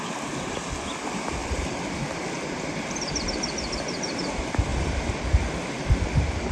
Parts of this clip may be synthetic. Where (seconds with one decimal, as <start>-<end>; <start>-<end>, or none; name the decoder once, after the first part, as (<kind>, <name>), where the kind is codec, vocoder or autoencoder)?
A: 1.4-3.2 (vocoder, BigVGAN v2)